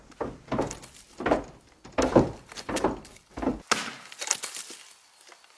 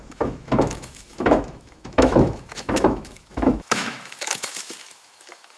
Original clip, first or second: first